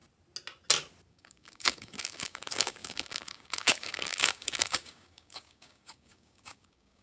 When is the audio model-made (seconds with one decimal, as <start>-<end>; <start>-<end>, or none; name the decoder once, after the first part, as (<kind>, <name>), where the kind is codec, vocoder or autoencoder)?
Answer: 1.1-7.0 (codec, DAC)